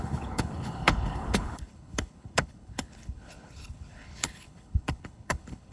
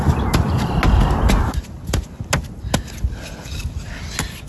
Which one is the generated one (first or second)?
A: first